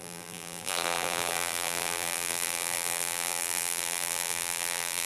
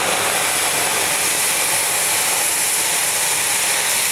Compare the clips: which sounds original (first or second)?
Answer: second